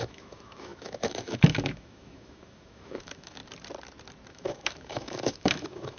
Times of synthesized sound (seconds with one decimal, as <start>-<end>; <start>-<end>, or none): 0.0-3.4; 4.3-6.0